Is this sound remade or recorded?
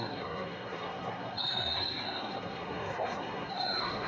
remade